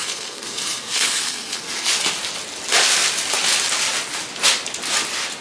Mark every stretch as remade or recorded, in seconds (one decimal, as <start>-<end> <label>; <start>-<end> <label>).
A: 0.0-1.9 remade; 1.9-5.4 recorded